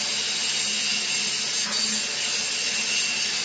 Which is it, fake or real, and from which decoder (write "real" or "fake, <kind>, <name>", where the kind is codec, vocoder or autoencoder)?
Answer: real